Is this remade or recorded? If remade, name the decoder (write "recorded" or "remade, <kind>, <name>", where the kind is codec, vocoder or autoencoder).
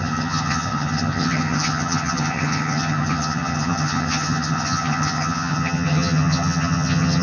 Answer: remade, vocoder, HiFi-GAN